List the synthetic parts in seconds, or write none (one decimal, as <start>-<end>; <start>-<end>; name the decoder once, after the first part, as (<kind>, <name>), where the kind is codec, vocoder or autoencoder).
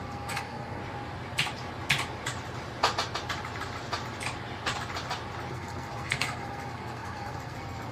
0.0-0.8 (codec, SNAC); 5.5-7.9